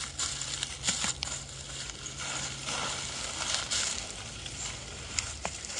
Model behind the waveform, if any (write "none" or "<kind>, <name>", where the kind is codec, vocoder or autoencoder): vocoder, BigVGAN v2